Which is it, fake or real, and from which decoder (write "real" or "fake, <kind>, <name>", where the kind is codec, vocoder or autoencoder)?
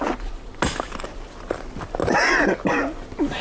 real